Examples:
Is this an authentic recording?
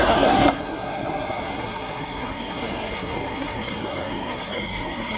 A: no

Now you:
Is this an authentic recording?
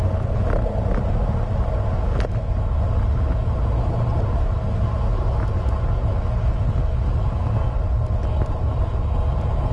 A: yes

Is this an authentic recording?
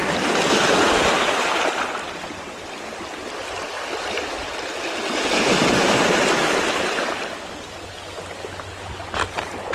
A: yes